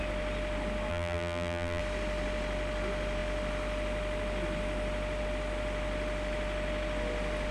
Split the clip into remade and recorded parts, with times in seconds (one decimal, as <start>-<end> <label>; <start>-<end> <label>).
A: 0.0-0.9 recorded; 0.9-1.8 remade; 1.8-7.5 recorded